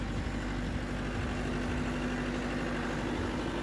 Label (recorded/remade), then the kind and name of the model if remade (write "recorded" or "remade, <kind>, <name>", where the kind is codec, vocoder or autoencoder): recorded